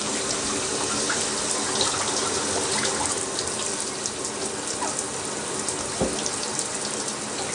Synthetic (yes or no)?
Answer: no